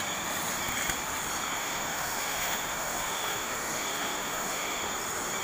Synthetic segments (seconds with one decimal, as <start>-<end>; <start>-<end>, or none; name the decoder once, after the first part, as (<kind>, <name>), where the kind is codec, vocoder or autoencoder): 1.6-4.8 (autoencoder, DAC-VAE)